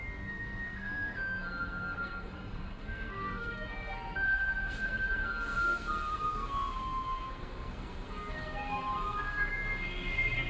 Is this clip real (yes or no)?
no